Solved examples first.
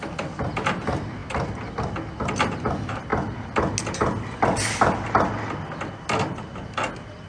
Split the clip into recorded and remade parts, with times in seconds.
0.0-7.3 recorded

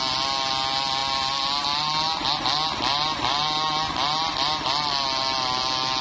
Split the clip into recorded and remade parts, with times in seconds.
0.0-6.0 recorded